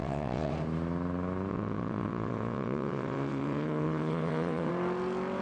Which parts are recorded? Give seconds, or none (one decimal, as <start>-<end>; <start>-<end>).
0.5-1.5; 4.7-5.4